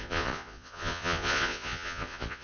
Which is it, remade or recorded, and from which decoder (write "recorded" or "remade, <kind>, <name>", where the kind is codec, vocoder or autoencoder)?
remade, vocoder, Vocos